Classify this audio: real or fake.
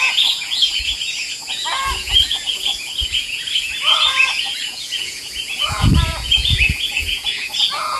fake